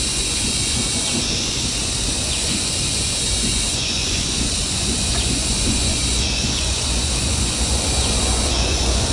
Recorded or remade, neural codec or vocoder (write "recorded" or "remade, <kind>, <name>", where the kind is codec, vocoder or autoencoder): remade, vocoder, Vocos